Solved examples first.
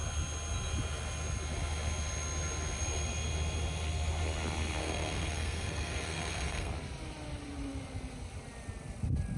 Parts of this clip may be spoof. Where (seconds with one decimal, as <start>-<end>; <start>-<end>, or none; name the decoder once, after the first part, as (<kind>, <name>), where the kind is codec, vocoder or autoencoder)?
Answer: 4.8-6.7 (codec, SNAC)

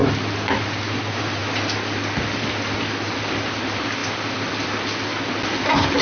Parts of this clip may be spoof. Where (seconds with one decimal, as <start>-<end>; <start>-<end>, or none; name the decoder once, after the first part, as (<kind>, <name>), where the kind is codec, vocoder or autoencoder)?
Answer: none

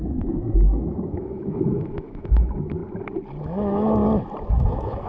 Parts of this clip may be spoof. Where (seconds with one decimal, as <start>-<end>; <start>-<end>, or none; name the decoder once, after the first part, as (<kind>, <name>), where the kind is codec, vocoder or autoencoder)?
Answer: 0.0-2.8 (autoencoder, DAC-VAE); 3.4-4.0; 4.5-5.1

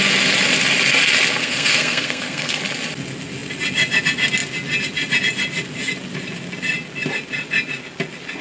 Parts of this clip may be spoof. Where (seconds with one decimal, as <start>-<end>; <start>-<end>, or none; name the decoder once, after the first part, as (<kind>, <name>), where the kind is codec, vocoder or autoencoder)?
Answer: 1.4-2.6 (codec, SNAC)